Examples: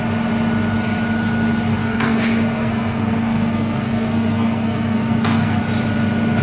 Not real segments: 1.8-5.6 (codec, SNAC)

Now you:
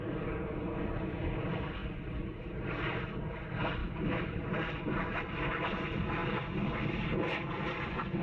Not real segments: 3.8-4.4 (autoencoder, DAC-VAE)

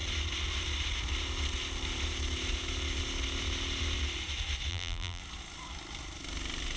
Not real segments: 4.7-5.2 (vocoder, BigVGAN v2)